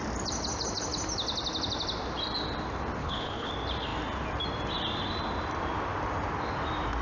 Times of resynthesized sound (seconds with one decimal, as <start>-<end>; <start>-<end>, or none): 3.0-3.5